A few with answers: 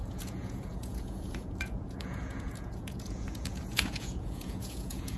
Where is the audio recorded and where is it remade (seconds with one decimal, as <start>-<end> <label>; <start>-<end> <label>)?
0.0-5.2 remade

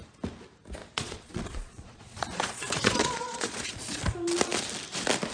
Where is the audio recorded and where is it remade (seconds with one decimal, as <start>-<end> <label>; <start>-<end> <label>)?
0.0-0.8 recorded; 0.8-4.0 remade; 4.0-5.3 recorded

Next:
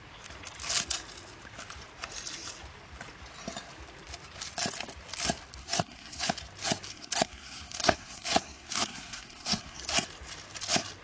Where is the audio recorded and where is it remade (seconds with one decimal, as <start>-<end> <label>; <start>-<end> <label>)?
0.0-5.6 recorded; 5.6-6.3 remade; 6.3-6.9 recorded; 6.9-9.8 remade; 9.8-11.0 recorded

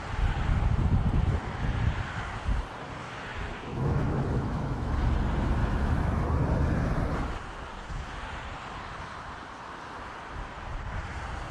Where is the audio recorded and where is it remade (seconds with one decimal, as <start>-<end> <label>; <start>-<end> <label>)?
0.0-3.7 recorded; 3.7-4.9 remade; 4.9-5.6 recorded; 5.6-6.2 remade; 6.2-11.5 recorded